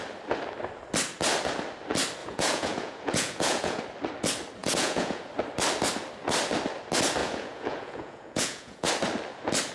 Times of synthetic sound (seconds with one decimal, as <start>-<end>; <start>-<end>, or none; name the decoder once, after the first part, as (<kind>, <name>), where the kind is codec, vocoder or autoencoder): 2.2-3.8 (vocoder, Vocos); 4.6-5.2; 7.2-8.9